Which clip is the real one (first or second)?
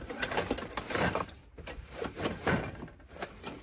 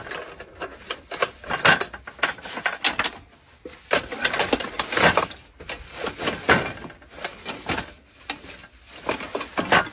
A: second